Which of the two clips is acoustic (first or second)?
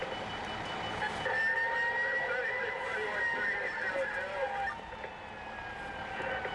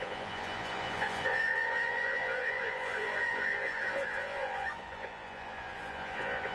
first